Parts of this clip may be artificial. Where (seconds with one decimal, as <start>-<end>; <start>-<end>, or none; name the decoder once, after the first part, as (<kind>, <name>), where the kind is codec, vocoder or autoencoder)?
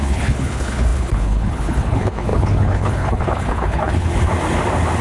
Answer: 0.0-4.1 (codec, HILCodec)